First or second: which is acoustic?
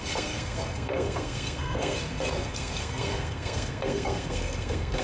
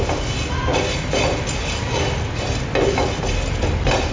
second